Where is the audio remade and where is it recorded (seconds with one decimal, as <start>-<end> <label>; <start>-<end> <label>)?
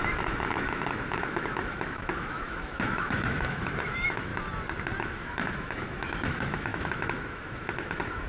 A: 0.0-4.3 remade; 4.3-5.0 recorded; 5.0-8.3 remade